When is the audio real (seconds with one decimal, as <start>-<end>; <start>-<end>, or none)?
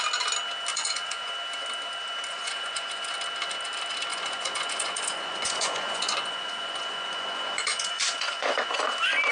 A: 0.0-0.7; 1.3-2.3; 3.1-4.1; 8.7-9.3